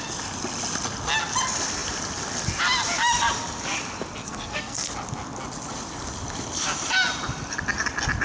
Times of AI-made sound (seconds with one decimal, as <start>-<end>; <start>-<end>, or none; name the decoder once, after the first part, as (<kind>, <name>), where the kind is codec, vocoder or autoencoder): 4.2-4.9 (codec, SNAC)